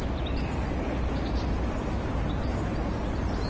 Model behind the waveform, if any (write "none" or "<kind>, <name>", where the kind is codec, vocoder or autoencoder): none